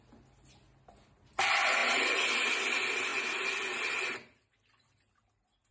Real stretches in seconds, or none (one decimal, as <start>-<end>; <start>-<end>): 0.0-5.7